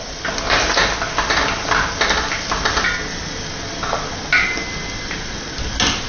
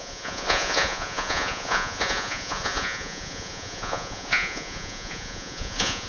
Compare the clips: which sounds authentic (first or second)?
first